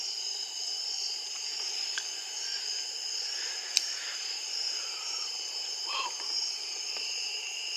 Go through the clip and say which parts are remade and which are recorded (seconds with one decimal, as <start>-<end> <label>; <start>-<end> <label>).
0.0-3.2 recorded; 3.2-7.8 remade